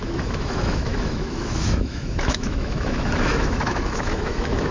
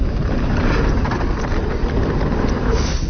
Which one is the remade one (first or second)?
first